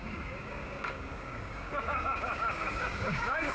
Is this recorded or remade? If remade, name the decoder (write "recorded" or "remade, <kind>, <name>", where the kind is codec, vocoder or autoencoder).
remade, codec, DAC